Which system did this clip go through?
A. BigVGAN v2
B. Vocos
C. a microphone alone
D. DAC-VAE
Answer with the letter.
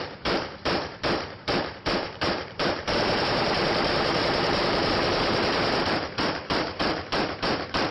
A